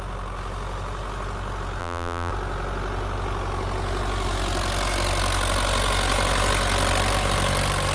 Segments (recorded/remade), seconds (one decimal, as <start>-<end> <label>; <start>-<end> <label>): 0.0-1.8 recorded; 1.8-2.3 remade; 2.3-7.9 recorded